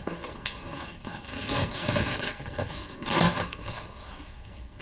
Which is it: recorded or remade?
remade